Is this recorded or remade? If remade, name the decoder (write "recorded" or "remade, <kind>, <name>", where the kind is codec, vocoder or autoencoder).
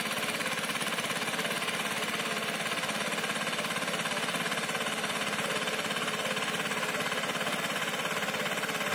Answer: recorded